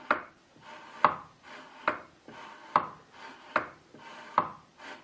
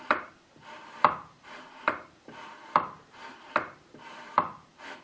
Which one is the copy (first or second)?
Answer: second